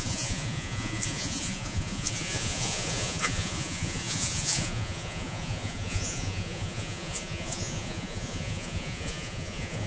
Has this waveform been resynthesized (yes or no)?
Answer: yes